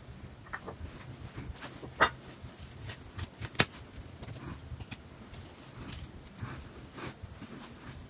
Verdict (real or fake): real